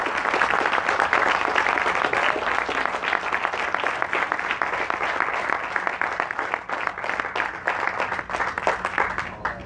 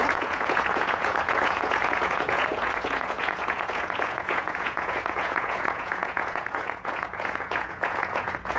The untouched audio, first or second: first